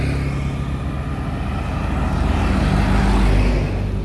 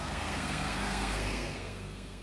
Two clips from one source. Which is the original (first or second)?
first